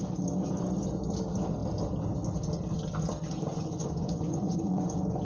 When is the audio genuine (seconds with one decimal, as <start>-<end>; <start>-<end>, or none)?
0.0-3.5

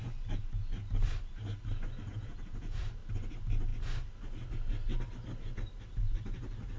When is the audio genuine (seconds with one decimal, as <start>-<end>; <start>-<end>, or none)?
0.0-2.1; 2.9-6.8

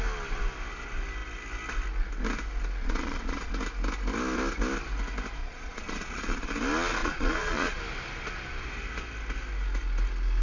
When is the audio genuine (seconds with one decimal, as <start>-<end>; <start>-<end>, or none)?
0.0-2.8; 3.5-5.4; 6.5-7.0; 7.8-10.4

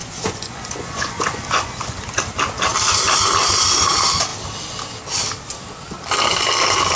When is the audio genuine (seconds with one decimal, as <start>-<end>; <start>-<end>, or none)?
2.0-7.0

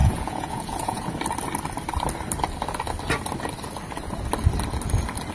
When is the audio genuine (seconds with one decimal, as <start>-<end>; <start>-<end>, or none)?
1.1-5.3